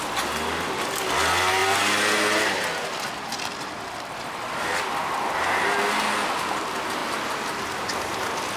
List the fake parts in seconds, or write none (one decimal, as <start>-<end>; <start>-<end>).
none

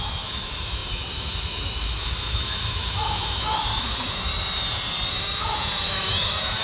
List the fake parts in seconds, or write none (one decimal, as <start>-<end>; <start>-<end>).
0.0-4.3; 5.1-6.6

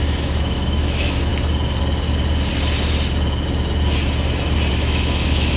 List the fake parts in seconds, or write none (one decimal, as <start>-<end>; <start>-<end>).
0.0-1.3; 4.7-5.6

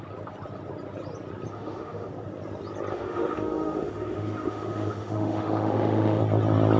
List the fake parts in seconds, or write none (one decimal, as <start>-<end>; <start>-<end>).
1.5-2.1; 2.9-6.2

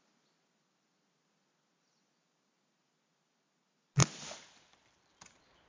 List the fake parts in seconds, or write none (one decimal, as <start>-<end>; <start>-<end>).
none